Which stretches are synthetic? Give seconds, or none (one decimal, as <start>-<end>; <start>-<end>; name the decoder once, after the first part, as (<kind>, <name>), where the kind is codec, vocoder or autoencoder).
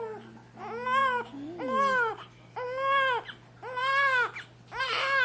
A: none